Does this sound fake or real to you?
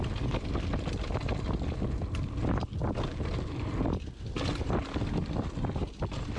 real